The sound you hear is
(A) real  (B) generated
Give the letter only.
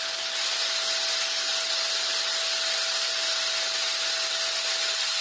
A